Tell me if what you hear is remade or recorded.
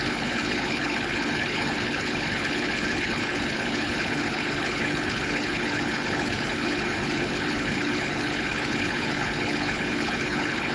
remade